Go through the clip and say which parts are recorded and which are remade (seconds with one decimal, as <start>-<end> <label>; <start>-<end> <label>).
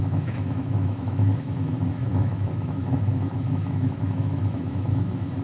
0.0-5.4 remade